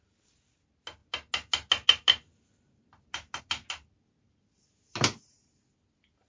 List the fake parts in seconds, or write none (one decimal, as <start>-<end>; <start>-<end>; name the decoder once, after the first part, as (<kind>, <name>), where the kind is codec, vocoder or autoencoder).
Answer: none